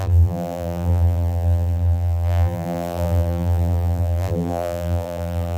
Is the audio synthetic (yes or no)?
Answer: yes